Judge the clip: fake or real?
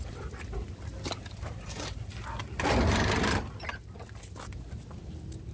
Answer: real